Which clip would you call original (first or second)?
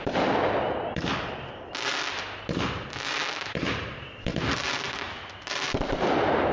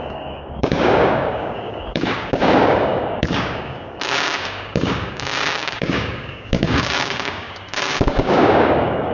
first